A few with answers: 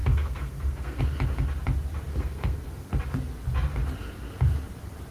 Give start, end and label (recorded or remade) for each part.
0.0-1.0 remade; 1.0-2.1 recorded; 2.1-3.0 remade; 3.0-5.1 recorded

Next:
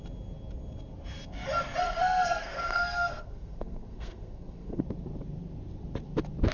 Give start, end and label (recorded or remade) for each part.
0.0-1.8 recorded; 1.8-4.8 remade; 4.8-6.5 recorded

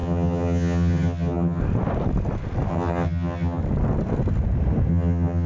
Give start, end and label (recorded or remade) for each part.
0.0-1.6 remade; 1.6-2.7 recorded; 2.7-3.6 remade; 3.6-4.9 recorded; 4.9-5.5 remade

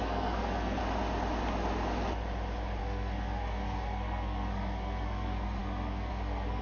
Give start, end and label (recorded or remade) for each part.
0.0-0.8 remade; 0.8-2.8 recorded; 2.8-6.6 remade

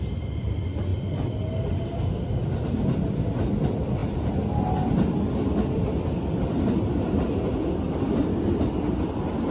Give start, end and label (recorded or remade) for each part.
0.0-9.5 recorded

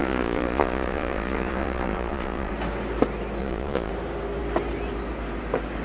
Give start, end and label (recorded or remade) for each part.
0.0-2.5 remade; 2.5-3.4 recorded; 3.4-3.9 remade; 3.9-5.8 recorded

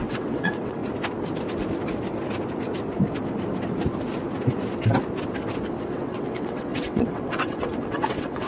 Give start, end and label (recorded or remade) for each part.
0.0-0.8 remade; 0.8-5.9 recorded; 5.9-8.5 remade